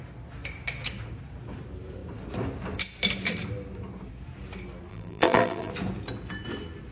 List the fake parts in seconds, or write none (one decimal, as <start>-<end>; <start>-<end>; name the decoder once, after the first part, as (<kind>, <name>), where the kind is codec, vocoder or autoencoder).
4.9-5.7 (vocoder, BigVGAN v2)